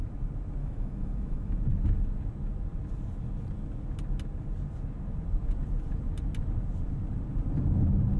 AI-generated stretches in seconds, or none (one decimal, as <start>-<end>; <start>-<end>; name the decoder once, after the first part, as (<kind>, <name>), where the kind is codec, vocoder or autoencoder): 0.6-1.5 (autoencoder, DAC-VAE)

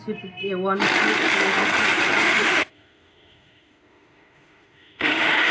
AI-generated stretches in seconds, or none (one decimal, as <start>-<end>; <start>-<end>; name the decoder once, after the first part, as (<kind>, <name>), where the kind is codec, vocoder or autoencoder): 2.2-5.5 (autoencoder, DAC-VAE)